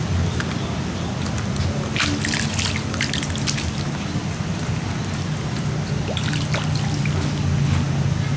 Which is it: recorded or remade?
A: recorded